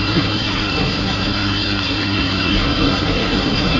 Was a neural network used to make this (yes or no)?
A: yes